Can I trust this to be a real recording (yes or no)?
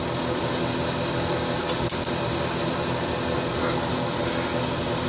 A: yes